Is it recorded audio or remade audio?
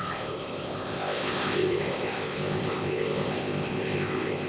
remade